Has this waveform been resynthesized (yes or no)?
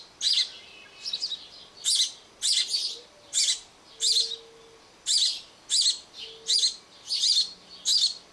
no